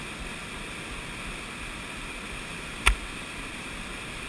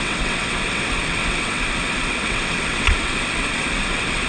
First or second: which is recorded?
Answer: first